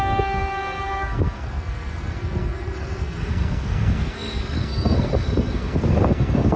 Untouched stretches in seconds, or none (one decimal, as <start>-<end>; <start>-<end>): none

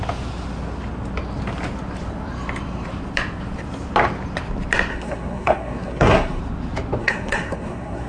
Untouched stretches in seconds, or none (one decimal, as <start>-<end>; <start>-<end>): 0.0-4.9; 6.4-7.0

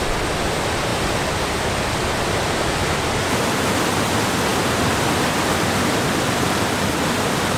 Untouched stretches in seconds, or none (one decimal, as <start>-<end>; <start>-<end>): 0.0-4.5; 6.9-7.6

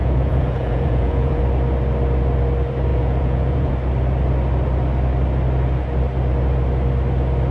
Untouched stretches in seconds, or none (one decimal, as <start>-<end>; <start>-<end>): 1.4-2.9; 3.7-7.5